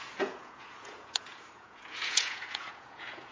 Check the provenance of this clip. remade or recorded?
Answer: remade